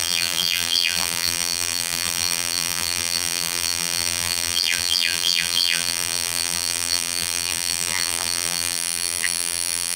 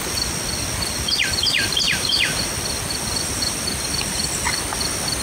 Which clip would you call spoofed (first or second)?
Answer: first